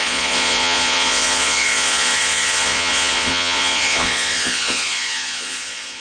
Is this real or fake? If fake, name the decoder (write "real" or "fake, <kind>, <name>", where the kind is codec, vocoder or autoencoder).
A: fake, vocoder, Vocos